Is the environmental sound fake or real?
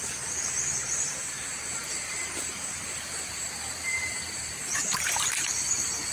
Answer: fake